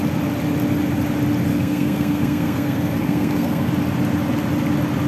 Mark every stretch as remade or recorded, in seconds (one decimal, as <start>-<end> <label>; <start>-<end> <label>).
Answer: 0.0-1.5 recorded; 1.5-3.7 remade; 3.7-5.1 recorded

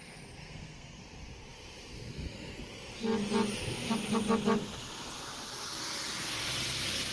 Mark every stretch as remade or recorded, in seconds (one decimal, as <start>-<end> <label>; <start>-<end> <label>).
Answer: 0.0-0.4 recorded; 0.4-1.0 remade; 1.0-7.1 recorded

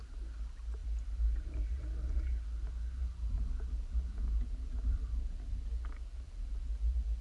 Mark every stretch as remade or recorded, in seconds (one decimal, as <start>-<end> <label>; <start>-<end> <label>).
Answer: 0.0-7.2 recorded

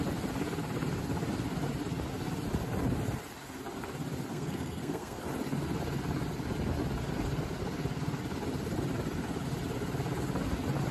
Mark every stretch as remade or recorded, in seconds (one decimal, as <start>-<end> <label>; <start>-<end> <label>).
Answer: 0.0-4.3 recorded; 4.3-5.2 remade; 5.2-10.9 recorded